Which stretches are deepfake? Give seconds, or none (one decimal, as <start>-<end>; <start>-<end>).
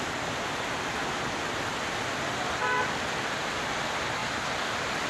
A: 2.6-3.6; 4.2-5.1